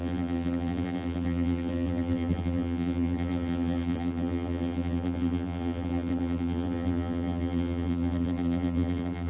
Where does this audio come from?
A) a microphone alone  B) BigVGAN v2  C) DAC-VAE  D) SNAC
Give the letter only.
B